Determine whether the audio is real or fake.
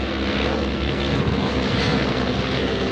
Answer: fake